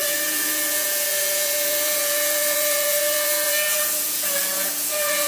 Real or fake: fake